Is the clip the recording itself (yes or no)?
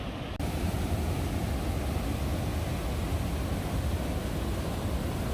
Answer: yes